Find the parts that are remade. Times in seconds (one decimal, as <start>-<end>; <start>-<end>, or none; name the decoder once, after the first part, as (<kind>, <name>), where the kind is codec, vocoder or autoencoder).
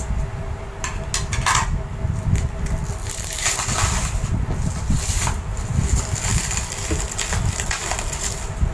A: 6.3-7.9 (vocoder, BigVGAN v2)